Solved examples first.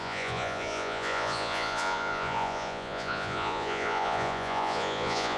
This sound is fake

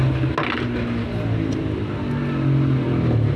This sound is real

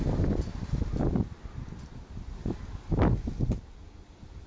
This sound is real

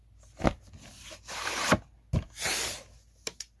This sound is real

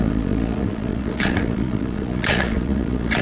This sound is fake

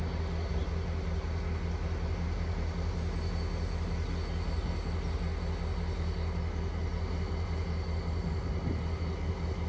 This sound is real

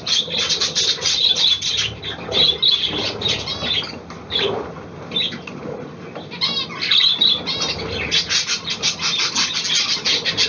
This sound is real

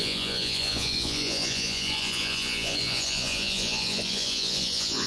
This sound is fake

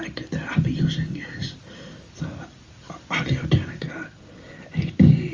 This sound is real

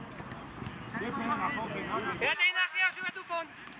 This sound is real